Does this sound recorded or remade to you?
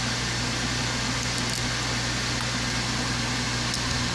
recorded